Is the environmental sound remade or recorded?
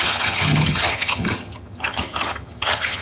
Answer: remade